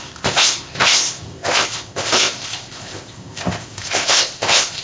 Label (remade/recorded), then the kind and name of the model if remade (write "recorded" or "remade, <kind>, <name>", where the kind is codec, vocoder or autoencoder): remade, codec, ZipCodec